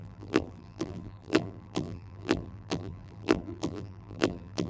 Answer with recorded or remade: remade